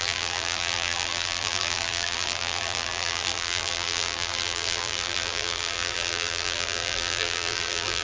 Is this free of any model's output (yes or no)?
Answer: no